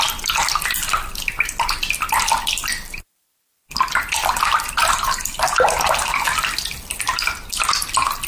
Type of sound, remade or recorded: recorded